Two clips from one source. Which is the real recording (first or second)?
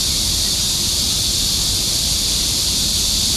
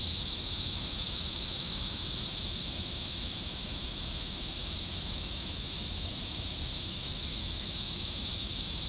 first